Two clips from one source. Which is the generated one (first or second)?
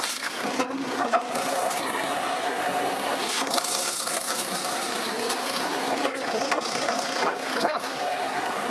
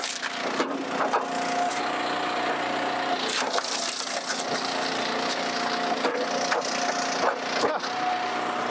first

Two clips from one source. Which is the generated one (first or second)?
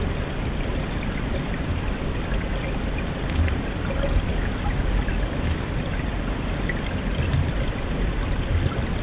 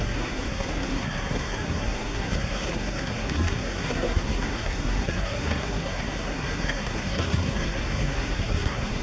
second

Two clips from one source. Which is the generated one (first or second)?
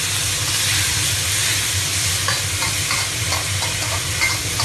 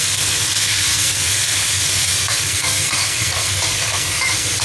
second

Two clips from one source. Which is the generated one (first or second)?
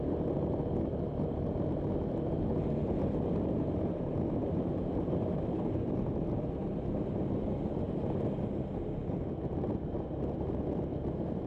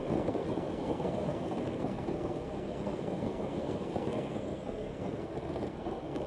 second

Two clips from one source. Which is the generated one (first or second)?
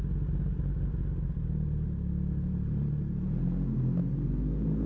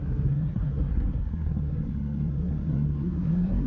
second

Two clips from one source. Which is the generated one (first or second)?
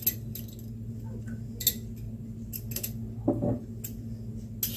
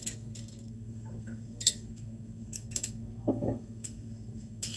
second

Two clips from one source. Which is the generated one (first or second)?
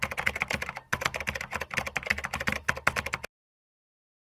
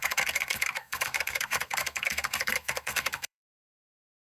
second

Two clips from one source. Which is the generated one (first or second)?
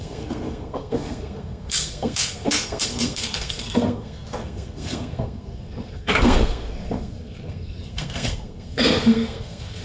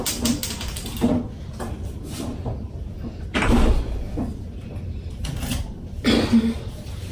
first